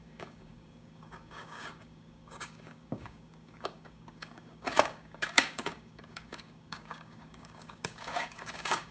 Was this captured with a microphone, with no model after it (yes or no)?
no